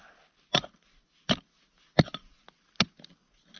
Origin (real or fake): real